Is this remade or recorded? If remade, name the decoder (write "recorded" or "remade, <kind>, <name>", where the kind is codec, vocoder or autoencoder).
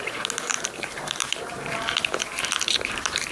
remade, vocoder, BigVGAN v2